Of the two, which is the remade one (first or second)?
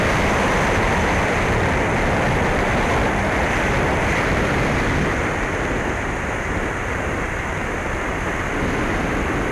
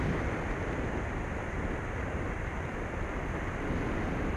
second